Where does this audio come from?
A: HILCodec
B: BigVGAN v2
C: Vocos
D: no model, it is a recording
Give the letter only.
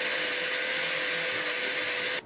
D